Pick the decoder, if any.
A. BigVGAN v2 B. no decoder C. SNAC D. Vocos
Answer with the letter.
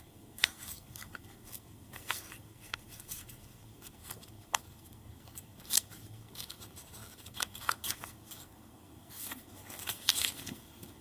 C